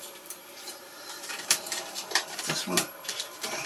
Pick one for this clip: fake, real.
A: fake